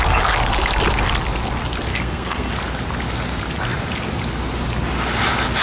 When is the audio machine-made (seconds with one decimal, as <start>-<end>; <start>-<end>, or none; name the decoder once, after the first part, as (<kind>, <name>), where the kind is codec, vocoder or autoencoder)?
1.9-2.5 (codec, SNAC)